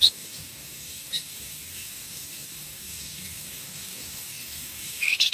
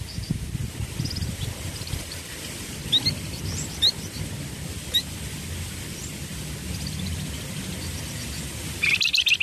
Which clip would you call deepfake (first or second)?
first